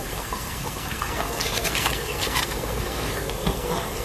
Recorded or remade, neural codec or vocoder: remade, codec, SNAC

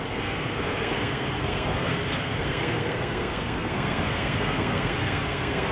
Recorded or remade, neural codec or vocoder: remade, codec, SNAC